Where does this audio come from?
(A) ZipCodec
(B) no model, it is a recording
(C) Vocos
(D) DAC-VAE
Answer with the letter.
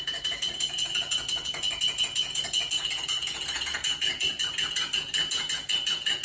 C